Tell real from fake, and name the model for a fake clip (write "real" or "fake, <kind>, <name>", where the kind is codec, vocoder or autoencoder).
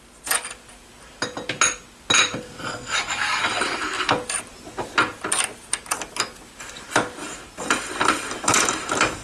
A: real